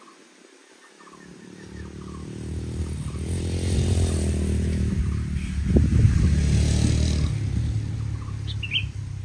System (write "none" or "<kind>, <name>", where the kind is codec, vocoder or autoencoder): none